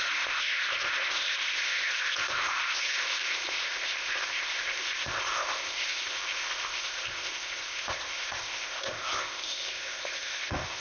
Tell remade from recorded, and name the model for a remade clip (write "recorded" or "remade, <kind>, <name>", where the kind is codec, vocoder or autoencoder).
remade, codec, ZipCodec